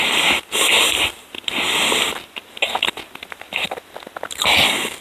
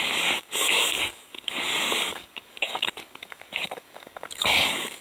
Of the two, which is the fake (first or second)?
second